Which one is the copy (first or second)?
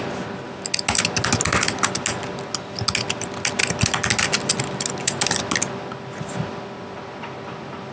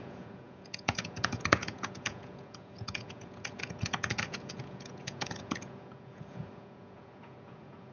second